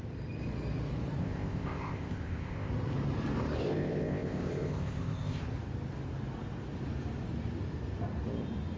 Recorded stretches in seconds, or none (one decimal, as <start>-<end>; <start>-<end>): 0.0-1.2; 2.7-3.6; 5.4-8.8